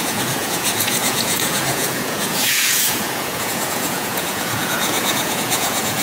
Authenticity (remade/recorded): remade